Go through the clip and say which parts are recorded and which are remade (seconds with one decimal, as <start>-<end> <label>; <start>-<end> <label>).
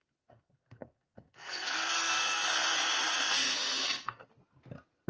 0.0-4.3 remade; 4.3-5.1 recorded